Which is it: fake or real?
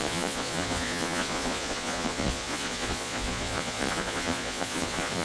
fake